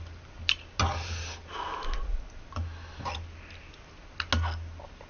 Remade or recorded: recorded